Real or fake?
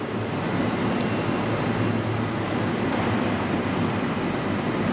real